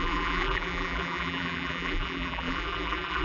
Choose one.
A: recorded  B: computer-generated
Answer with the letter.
B